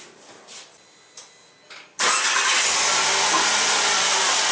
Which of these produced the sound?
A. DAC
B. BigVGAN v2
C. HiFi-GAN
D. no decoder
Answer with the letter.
D